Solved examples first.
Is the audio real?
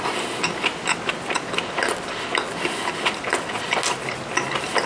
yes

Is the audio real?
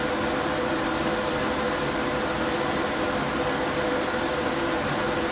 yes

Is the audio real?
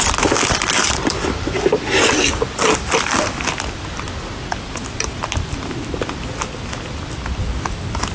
yes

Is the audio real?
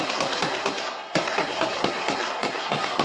no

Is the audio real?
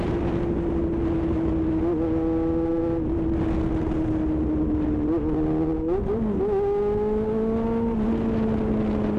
yes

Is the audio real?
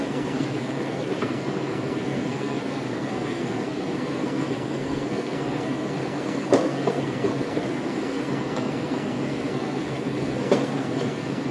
no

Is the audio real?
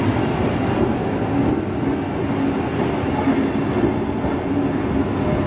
yes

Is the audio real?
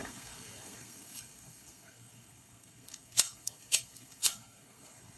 no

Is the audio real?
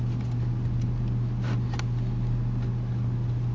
yes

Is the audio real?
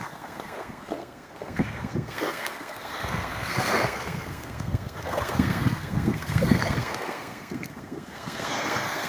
no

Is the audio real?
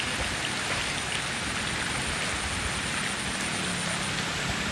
yes